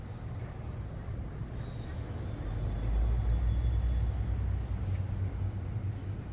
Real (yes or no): yes